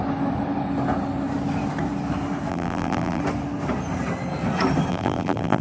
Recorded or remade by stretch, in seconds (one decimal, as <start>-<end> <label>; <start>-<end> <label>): 0.0-2.5 recorded; 2.5-3.2 remade; 3.2-4.9 recorded; 4.9-5.6 remade